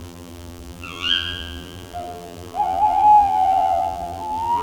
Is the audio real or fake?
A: fake